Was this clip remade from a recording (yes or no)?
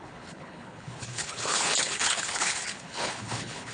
yes